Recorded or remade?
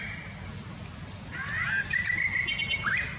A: recorded